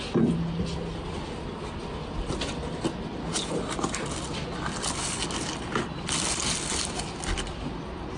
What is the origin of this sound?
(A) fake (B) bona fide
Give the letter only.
B